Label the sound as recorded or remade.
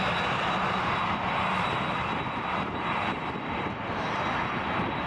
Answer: recorded